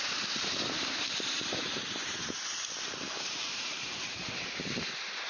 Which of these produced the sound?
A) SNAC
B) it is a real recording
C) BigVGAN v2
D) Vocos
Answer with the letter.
C